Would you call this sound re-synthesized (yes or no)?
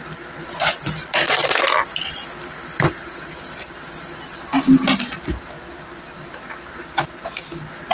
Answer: no